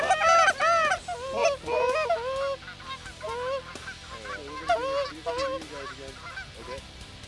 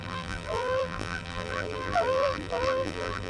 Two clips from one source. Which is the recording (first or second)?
first